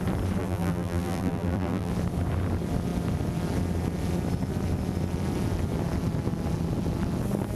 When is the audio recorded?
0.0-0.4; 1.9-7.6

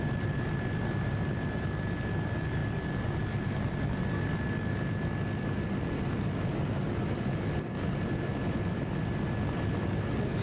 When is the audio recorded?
0.0-10.4

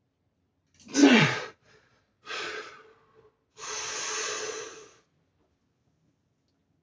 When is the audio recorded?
0.0-1.0; 5.1-6.8

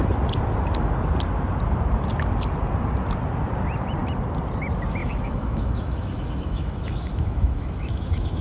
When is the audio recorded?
0.0-5.0

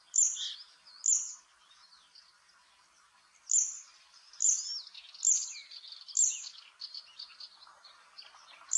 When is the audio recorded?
0.0-8.8